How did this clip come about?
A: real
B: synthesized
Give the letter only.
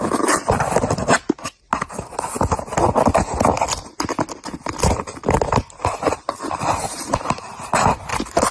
A